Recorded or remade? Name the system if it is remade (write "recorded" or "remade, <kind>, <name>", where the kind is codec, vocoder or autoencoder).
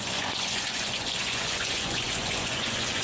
remade, vocoder, Vocos